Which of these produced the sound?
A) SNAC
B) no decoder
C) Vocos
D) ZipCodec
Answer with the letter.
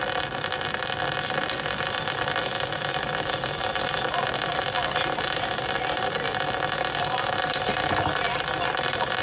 B